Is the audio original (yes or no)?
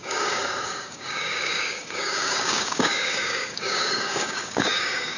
no